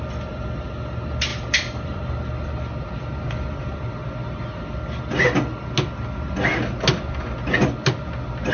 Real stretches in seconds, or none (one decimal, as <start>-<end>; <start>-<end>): 0.0-1.3; 2.2-8.5